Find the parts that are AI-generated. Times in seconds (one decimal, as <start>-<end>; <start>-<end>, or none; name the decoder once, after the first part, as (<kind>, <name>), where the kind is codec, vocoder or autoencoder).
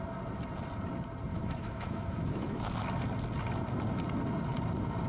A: 1.3-2.6 (autoencoder, DAC-VAE)